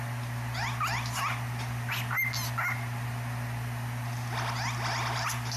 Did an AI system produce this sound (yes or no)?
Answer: no